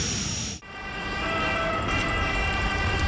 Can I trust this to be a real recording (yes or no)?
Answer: yes